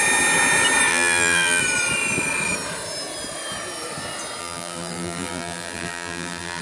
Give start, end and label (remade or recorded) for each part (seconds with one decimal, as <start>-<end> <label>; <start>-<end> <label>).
0.0-0.9 recorded; 0.9-1.6 remade; 1.6-4.4 recorded; 4.4-6.6 remade